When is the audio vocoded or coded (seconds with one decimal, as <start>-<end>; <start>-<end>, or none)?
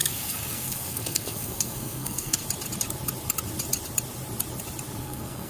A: 0.0-2.4; 5.0-5.5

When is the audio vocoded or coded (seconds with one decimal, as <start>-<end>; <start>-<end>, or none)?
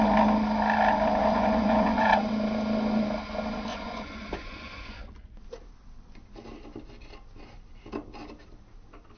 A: 1.2-2.1; 3.7-5.4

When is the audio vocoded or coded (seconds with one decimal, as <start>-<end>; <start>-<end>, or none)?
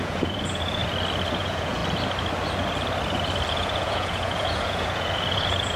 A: 0.0-0.8; 1.4-1.8; 3.5-5.8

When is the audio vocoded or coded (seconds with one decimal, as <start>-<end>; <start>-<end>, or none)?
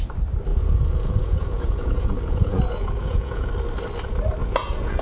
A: 0.5-3.5; 4.4-5.0